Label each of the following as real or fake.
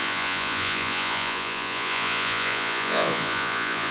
fake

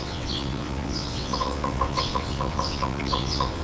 fake